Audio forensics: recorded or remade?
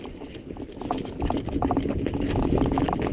recorded